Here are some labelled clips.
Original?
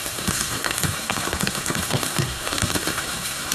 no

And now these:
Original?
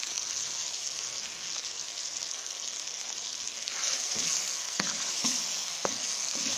no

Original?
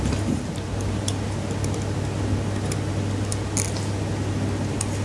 yes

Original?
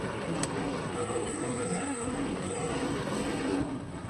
no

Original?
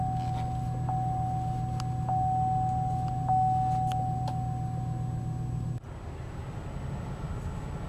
yes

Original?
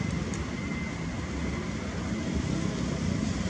yes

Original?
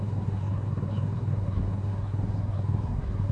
no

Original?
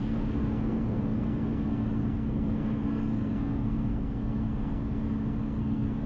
no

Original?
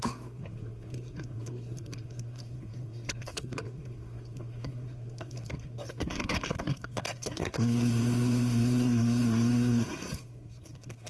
no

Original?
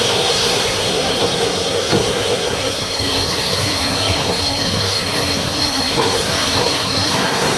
no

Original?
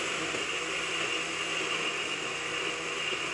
yes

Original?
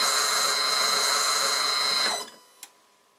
yes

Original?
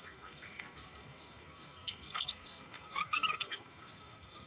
no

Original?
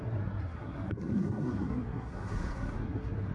no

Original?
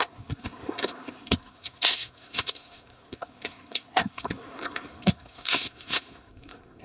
no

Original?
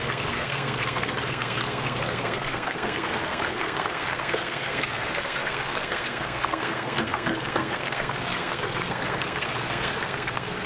no